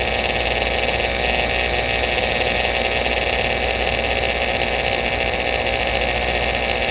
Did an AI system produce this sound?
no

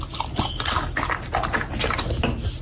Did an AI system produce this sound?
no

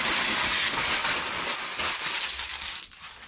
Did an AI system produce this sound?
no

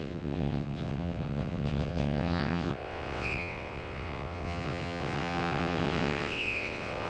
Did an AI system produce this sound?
yes